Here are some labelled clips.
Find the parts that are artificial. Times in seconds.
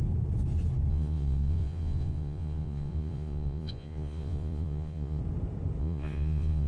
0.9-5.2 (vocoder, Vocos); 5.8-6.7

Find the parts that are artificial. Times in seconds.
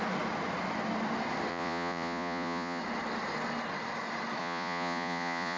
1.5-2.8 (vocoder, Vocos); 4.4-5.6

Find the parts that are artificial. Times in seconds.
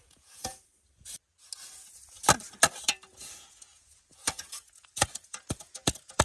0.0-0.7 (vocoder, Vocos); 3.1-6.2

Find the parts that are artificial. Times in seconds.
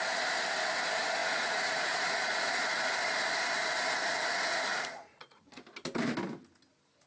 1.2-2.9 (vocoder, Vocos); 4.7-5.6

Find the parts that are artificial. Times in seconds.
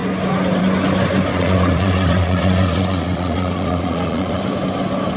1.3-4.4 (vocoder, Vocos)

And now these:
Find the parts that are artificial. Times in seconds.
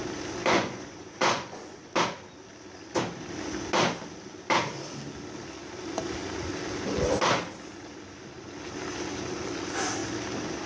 0.4-1.9 (vocoder, Vocos)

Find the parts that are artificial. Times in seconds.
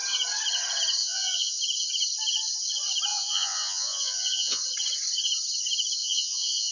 1.0-1.6 (vocoder, Vocos); 3.1-4.6; 6.0-6.7